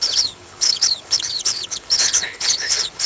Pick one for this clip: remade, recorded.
remade